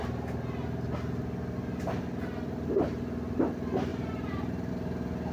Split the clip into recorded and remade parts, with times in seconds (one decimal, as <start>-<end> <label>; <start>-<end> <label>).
0.0-3.9 recorded; 3.9-4.7 remade; 4.7-5.3 recorded